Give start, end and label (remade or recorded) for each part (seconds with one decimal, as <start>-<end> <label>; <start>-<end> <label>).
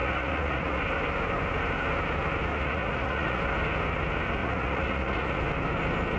0.0-0.8 remade; 0.8-2.5 recorded; 2.5-3.4 remade; 3.4-4.4 recorded; 4.4-5.4 remade; 5.4-6.2 recorded